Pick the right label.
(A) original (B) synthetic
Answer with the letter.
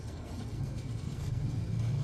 B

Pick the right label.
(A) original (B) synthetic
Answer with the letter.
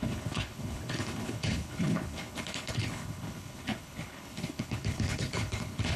B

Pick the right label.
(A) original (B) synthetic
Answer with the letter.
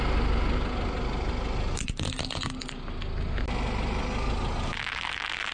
A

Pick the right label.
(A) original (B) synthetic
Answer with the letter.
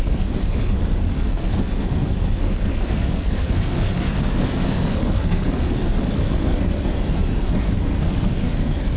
B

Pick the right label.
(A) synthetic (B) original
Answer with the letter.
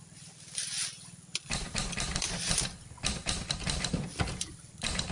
A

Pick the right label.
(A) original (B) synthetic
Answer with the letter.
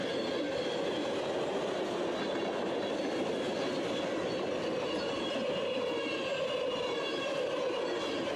A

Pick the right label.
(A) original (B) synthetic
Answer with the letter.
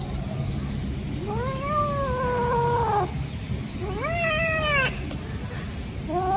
A